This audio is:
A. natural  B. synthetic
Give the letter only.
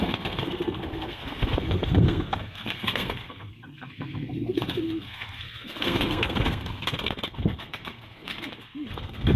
B